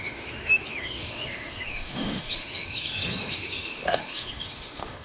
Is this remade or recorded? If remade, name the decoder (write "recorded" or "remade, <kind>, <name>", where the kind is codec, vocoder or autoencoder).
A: remade, autoencoder, DAC-VAE